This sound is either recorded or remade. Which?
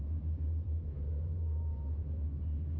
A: remade